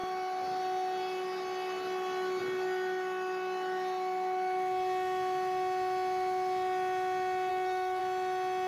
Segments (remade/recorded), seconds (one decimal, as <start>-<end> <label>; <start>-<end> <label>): 0.0-7.5 recorded; 7.5-8.0 remade; 8.0-8.7 recorded